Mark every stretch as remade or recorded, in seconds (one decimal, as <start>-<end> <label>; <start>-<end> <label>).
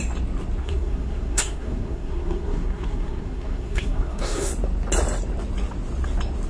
0.0-0.6 recorded; 0.6-4.5 remade; 4.5-6.5 recorded